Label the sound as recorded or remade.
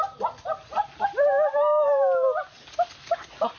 recorded